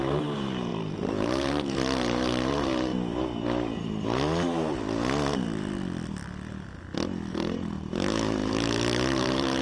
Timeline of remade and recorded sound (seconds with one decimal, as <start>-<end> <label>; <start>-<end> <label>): 0.0-2.9 remade; 2.9-7.3 recorded; 7.3-9.6 remade